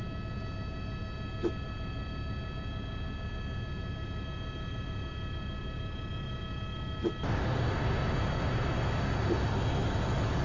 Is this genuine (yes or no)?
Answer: yes